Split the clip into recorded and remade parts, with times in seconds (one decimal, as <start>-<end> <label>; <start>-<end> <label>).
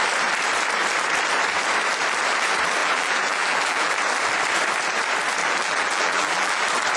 0.0-2.8 recorded; 2.8-3.9 remade; 3.9-5.4 recorded; 5.4-6.6 remade; 6.6-7.0 recorded